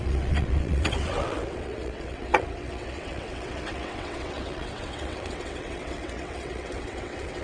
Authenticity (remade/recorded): remade